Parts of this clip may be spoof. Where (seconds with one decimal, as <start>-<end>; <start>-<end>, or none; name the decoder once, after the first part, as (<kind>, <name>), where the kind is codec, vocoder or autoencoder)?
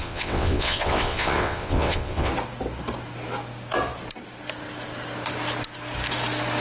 0.0-2.3 (vocoder, WaveNeXt)